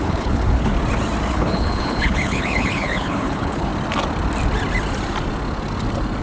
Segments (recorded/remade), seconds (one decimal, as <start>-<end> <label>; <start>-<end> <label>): 0.0-0.7 remade; 0.7-1.3 recorded; 1.3-3.7 remade; 3.7-6.2 recorded